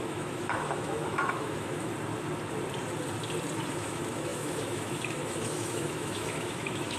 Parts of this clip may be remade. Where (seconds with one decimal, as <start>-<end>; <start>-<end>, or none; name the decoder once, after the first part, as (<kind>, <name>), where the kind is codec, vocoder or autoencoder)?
0.0-1.9 (autoencoder, DAC-VAE); 3.7-7.0